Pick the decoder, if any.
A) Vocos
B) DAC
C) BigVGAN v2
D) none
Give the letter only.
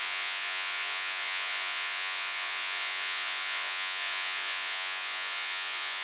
A